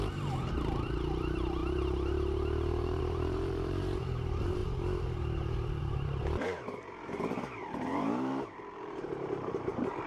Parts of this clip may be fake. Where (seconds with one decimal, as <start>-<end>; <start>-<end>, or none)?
0.0-4.6; 5.8-10.1